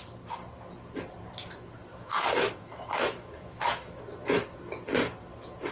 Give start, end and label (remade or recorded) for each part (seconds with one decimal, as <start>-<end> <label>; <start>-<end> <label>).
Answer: 0.0-1.9 recorded; 1.9-4.0 remade; 4.0-5.7 recorded